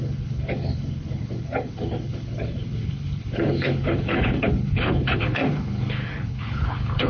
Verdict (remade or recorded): remade